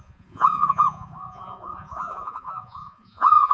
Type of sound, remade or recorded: remade